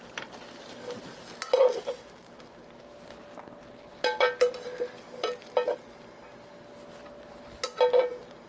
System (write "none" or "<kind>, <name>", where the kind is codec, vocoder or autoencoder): none